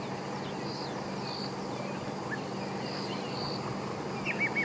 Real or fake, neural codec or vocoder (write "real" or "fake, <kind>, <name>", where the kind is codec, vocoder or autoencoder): real